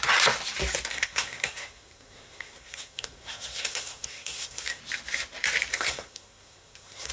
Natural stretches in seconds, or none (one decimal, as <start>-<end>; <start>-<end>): 0.0-0.9; 4.8-5.7